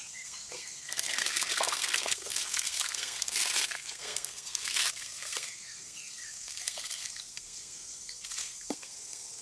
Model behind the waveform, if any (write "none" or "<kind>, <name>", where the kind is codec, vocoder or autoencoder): codec, SNAC